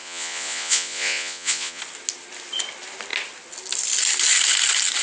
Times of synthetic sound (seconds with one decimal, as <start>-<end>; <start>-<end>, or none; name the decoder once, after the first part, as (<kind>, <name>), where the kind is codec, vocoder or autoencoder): 0.0-1.8 (vocoder, Vocos)